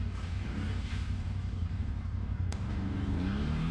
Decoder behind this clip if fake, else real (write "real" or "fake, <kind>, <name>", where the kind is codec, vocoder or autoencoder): fake, codec, DAC